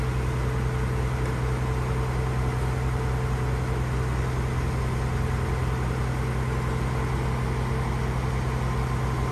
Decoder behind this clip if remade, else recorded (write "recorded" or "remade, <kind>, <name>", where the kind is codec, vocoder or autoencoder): recorded